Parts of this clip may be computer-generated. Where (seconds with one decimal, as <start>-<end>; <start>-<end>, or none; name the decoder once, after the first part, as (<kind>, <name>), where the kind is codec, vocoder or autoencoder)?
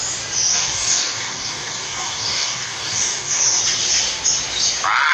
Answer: 0.5-3.6 (codec, DAC)